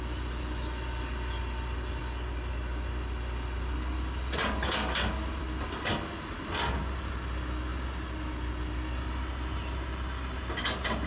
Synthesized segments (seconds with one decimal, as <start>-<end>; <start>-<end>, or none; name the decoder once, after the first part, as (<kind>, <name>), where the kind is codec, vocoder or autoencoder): none